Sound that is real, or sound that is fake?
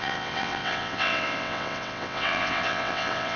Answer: fake